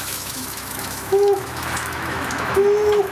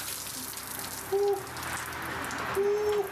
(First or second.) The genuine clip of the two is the second